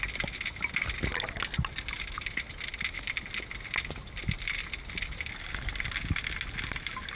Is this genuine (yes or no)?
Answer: yes